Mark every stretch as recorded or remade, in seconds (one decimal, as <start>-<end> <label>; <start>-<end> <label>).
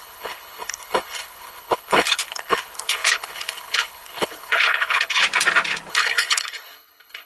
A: 0.0-5.2 remade; 5.2-5.9 recorded; 5.9-7.3 remade